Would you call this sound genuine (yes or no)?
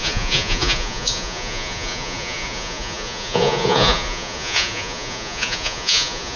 no